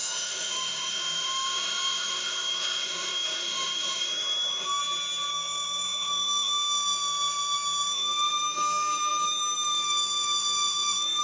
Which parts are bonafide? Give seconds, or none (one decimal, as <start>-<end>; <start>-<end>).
4.8-5.3